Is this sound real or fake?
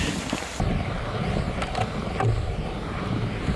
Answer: real